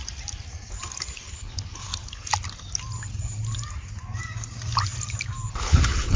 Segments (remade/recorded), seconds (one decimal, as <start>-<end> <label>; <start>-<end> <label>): 0.0-1.3 recorded; 1.3-1.9 remade; 1.9-5.6 recorded; 5.6-6.2 remade